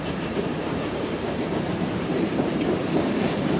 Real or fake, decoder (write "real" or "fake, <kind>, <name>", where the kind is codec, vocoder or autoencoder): fake, vocoder, BigVGAN v2